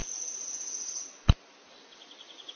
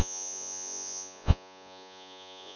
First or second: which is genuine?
first